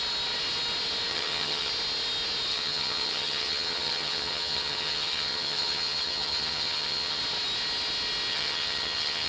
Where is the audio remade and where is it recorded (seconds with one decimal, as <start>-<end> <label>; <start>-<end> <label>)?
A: 0.0-1.1 recorded; 1.1-1.7 remade; 1.7-2.5 recorded; 2.5-7.2 remade; 7.2-8.3 recorded; 8.3-9.3 remade